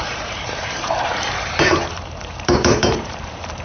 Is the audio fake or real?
fake